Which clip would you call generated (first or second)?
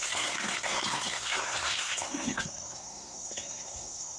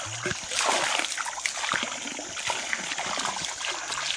first